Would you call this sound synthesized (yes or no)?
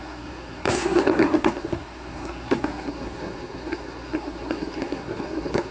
yes